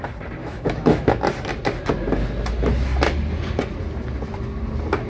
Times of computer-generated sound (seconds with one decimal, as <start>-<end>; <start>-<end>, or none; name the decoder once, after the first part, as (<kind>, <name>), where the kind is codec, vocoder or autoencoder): 0.4-1.2 (autoencoder, DAC-VAE)